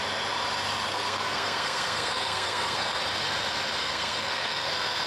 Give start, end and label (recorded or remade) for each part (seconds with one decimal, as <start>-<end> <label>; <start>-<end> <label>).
0.0-0.9 recorded; 0.9-3.0 remade; 3.0-3.8 recorded; 3.8-5.1 remade